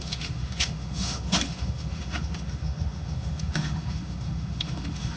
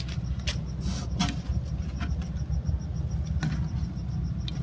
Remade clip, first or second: first